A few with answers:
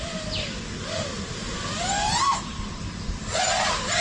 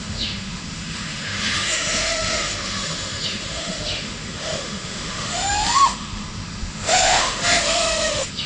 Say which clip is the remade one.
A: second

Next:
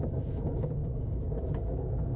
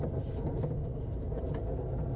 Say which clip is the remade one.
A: first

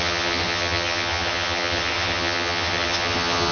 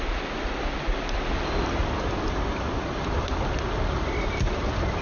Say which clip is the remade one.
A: first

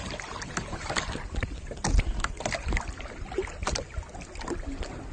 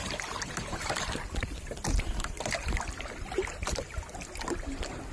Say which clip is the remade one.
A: second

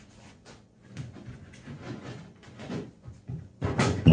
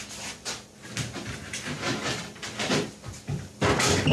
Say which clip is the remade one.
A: first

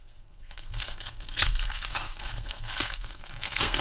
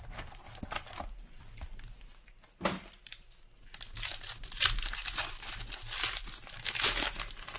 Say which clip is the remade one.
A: first